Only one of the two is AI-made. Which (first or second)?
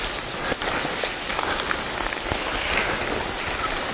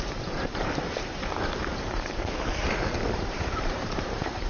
second